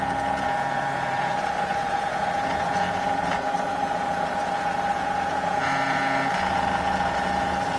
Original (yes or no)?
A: no